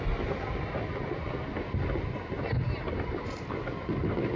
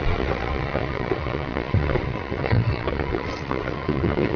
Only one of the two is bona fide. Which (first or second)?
first